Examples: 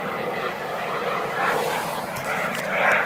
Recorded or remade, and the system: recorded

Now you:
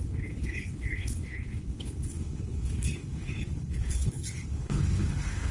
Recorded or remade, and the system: remade, codec, HILCodec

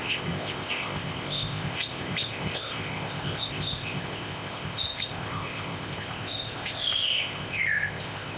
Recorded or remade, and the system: remade, codec, ZipCodec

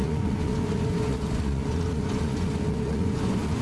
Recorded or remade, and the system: remade, vocoder, Vocos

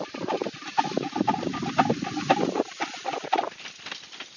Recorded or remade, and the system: recorded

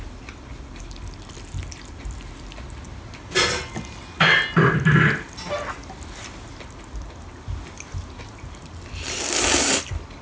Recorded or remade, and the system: recorded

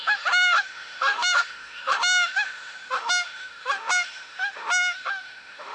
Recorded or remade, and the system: remade, autoencoder, DAC-VAE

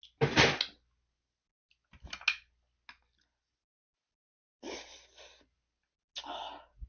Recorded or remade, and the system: recorded